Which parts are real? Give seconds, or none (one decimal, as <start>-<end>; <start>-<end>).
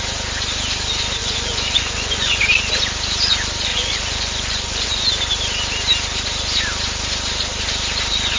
0.0-1.2; 2.4-3.7; 5.1-8.4